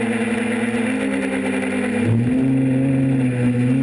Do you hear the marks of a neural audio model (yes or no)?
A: no